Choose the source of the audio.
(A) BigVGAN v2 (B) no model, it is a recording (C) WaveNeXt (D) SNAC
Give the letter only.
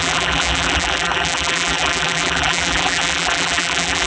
A